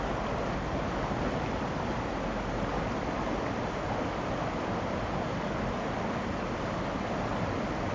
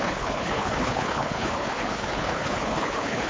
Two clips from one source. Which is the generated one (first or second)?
second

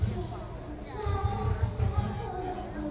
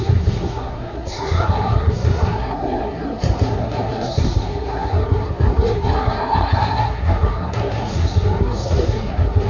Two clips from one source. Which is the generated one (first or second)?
second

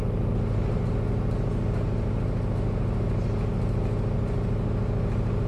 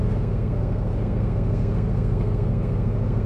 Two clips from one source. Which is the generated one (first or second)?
second